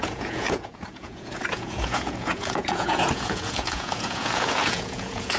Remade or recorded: remade